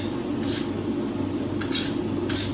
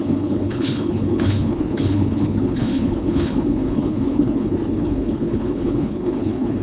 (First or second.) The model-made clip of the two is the second